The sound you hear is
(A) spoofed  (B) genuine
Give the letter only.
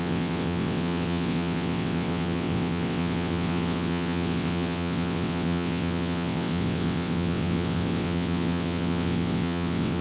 A